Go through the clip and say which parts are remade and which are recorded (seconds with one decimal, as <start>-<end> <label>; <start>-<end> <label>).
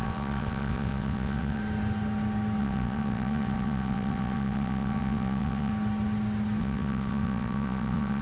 0.0-1.6 remade; 1.6-2.6 recorded; 2.6-5.7 remade; 5.7-6.6 recorded; 6.6-8.2 remade